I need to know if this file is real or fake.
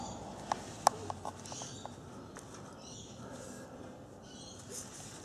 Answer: real